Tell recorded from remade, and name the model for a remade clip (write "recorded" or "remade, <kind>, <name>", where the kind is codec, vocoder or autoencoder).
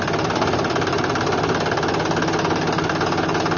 recorded